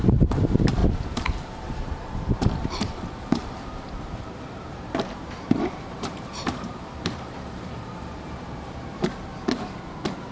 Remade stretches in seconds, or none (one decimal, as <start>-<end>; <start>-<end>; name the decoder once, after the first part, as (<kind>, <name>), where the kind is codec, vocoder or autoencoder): 0.0-9.3 (vocoder, BigVGAN v2)